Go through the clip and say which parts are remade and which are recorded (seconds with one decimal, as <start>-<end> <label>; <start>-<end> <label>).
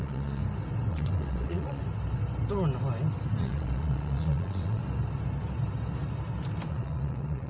0.0-0.4 remade; 0.4-0.9 recorded; 0.9-1.8 remade; 1.8-3.4 recorded; 3.4-4.8 remade; 4.8-6.7 recorded; 6.7-7.5 remade